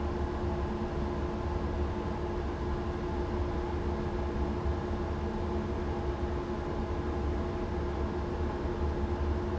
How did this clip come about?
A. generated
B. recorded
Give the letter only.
B